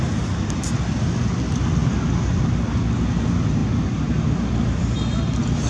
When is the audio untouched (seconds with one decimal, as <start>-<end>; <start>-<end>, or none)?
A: 0.0-5.7